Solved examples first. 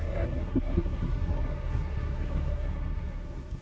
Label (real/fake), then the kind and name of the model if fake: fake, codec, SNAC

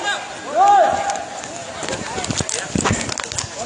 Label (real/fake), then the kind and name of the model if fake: real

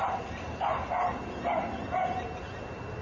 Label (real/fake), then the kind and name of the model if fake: real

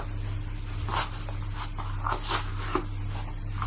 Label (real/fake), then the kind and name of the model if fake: real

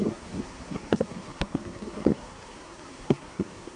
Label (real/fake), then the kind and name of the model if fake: fake, codec, SNAC